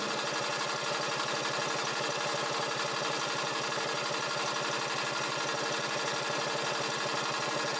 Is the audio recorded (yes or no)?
no